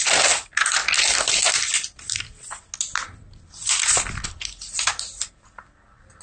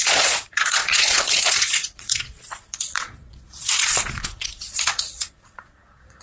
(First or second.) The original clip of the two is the first